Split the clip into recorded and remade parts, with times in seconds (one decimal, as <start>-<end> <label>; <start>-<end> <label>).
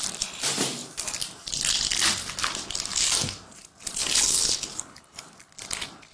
0.0-4.0 recorded; 4.0-5.2 remade; 5.2-6.1 recorded